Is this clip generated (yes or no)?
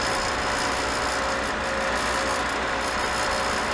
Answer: no